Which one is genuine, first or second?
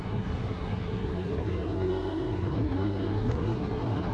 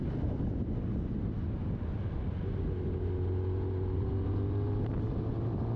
second